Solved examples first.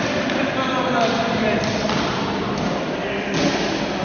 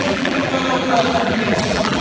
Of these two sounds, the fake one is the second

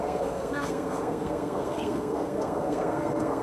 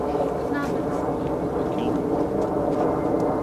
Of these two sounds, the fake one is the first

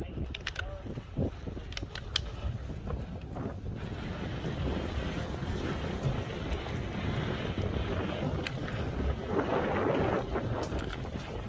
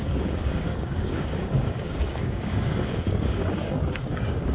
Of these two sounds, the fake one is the second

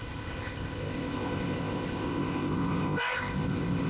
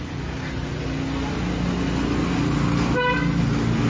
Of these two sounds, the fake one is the first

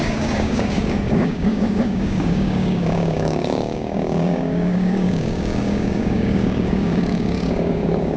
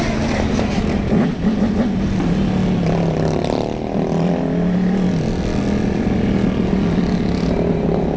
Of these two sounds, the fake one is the first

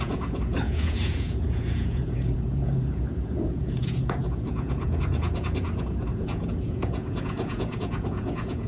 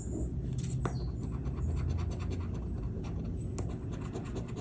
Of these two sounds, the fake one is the first